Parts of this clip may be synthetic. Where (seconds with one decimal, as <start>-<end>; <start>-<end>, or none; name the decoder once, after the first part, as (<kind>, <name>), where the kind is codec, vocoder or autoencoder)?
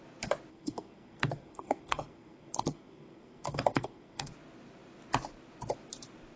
0.5-4.3 (codec, SNAC)